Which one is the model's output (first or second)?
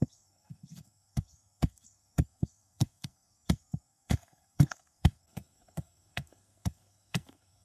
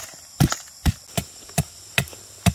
first